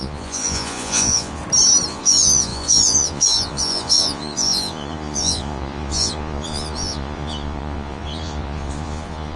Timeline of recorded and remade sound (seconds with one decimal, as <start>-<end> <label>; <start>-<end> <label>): 0.0-1.4 remade; 1.4-1.9 recorded; 1.9-9.4 remade